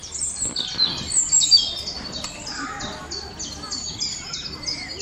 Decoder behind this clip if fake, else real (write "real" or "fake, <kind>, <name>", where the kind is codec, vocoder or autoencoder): real